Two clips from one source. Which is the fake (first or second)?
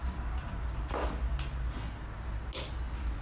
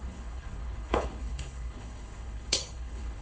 second